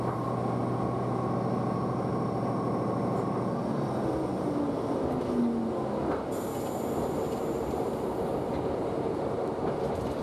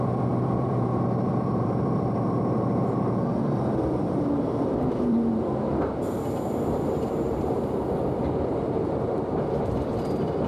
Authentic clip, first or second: first